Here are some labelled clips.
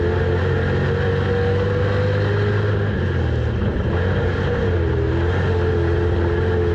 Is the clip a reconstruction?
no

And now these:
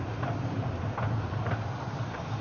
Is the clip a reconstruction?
no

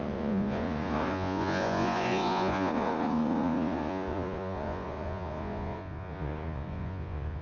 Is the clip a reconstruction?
yes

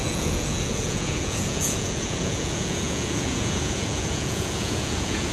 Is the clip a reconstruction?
yes